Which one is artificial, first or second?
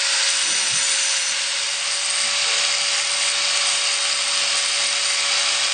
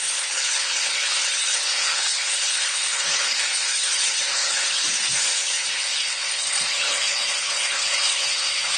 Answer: second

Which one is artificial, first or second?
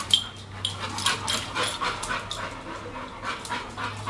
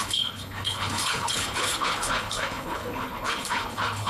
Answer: second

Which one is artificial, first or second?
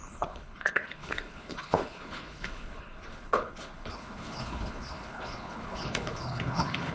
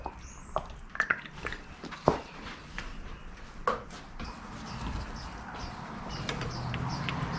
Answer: first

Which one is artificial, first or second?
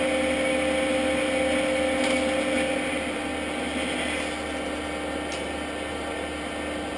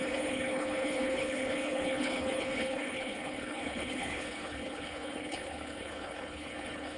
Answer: second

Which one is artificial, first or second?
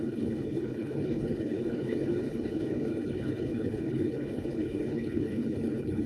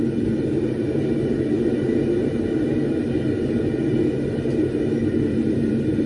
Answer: first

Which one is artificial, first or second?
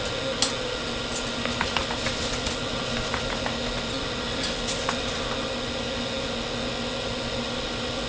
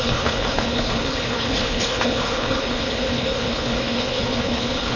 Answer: second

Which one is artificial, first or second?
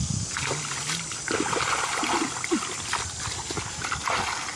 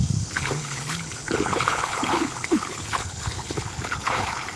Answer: second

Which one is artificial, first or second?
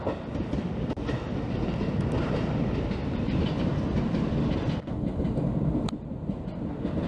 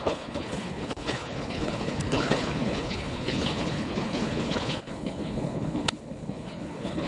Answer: second